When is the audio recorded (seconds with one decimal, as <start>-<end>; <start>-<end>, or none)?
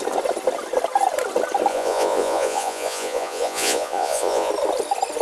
0.0-1.7; 4.5-5.2